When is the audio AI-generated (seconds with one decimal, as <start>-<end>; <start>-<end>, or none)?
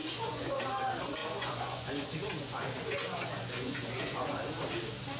0.0-0.6; 1.2-4.3